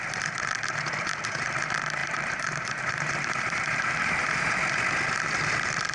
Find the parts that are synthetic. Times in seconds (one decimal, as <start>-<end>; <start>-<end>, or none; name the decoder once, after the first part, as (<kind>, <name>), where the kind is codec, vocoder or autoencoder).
2.0-4.5 (vocoder, BigVGAN v2)